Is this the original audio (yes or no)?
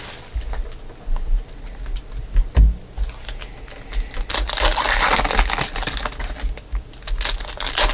yes